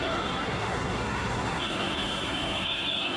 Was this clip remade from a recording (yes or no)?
yes